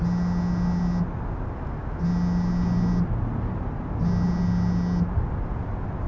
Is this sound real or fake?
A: real